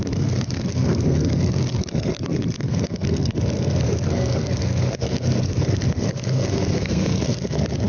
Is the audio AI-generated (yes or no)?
yes